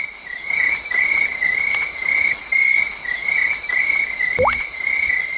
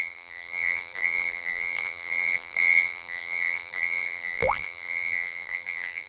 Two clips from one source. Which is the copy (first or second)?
second